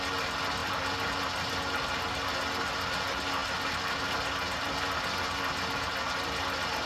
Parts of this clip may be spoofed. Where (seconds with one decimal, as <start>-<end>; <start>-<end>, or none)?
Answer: 3.4-4.0